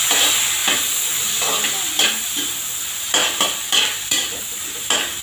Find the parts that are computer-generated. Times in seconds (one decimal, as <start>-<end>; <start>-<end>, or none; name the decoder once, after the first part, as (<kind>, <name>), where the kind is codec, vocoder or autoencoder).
none